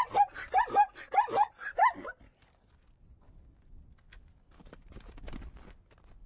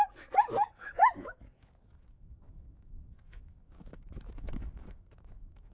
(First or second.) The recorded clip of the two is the first